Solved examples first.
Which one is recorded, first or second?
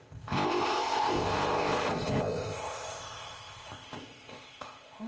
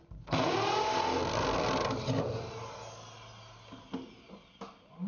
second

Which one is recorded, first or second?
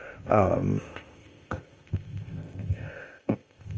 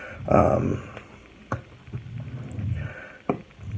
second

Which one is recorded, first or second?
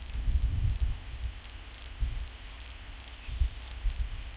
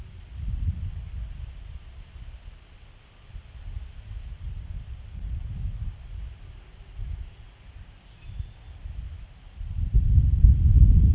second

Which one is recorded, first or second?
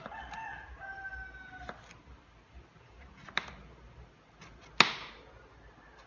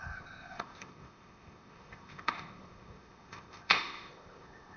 first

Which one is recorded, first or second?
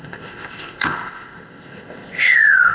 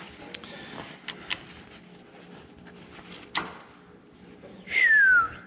second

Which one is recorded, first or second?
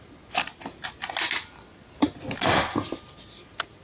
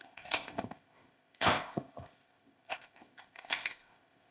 first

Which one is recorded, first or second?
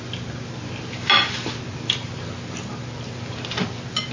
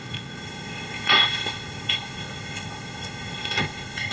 first